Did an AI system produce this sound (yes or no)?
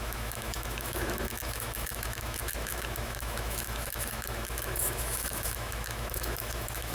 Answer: yes